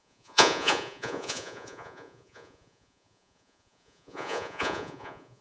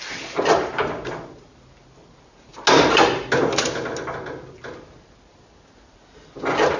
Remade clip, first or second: first